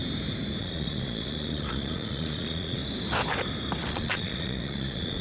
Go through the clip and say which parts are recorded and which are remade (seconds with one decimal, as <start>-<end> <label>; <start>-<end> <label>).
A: 0.0-0.6 recorded; 0.6-2.8 remade; 2.8-3.9 recorded; 3.9-5.2 remade